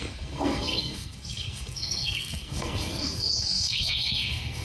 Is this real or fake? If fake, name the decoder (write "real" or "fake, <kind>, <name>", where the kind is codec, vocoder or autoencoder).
fake, codec, SNAC